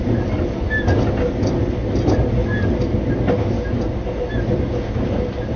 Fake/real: real